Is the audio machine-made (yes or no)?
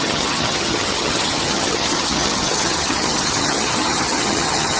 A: yes